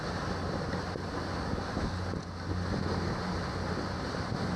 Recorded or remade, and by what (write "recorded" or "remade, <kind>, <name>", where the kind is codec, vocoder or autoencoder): recorded